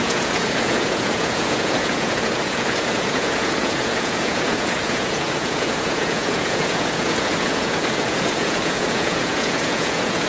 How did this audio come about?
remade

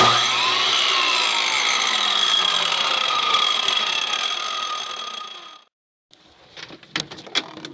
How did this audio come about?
recorded